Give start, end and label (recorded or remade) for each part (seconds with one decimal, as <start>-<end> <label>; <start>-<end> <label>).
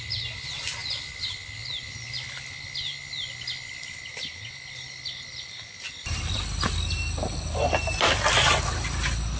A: 0.0-9.4 recorded